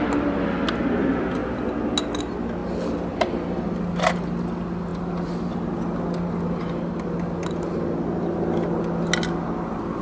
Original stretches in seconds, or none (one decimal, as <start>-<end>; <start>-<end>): 0.0-10.0